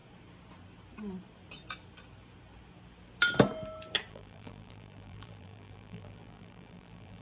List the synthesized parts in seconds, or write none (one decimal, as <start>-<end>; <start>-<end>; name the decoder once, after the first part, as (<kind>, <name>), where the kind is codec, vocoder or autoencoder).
4.1-7.2 (vocoder, BigVGAN v2)